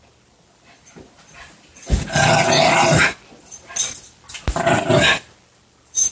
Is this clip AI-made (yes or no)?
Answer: no